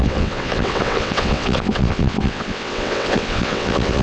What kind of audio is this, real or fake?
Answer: fake